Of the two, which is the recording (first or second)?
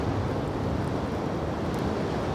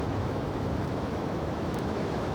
first